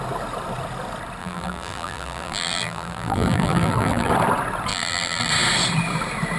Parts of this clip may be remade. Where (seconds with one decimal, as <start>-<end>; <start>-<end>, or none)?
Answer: 1.2-4.1; 4.7-5.3